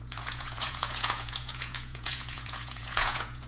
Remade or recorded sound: remade